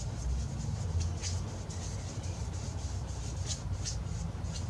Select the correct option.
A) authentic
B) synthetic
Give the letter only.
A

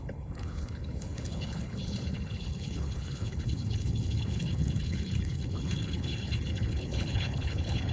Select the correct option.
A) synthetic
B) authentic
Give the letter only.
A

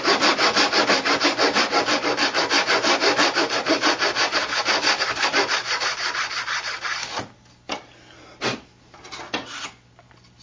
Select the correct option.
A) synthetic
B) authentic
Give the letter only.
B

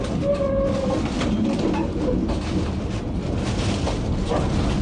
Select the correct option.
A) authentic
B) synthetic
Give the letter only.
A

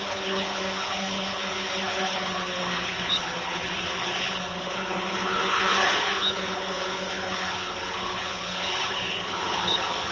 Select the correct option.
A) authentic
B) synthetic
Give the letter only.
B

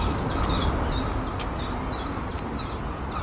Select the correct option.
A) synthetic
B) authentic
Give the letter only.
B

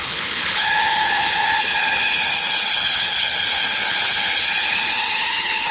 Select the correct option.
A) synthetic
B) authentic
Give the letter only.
A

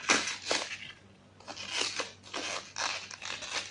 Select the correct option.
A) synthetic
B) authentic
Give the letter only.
B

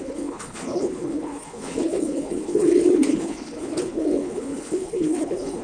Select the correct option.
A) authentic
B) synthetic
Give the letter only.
B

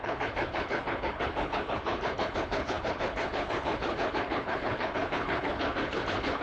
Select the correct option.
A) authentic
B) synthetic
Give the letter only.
B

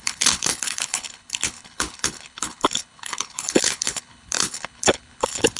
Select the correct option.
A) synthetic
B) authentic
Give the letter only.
A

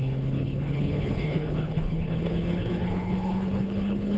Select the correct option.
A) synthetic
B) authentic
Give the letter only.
A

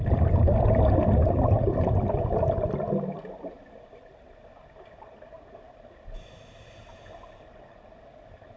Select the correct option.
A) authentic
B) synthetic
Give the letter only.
A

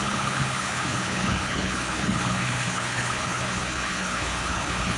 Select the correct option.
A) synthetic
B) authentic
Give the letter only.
A